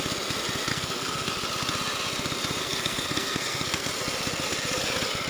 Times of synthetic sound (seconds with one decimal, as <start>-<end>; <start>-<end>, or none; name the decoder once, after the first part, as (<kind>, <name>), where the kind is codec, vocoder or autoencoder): 0.7-1.3 (codec, SNAC); 2.6-3.9